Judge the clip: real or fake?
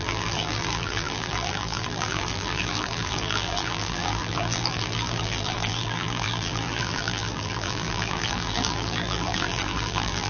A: fake